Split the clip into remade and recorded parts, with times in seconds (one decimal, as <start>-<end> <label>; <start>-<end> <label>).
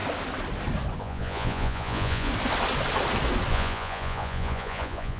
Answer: 0.0-1.0 recorded; 1.0-2.3 remade; 2.3-3.5 recorded; 3.5-5.2 remade